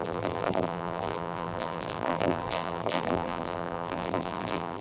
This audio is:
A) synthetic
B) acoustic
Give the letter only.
A